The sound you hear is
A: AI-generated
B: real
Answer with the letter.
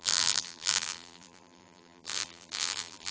A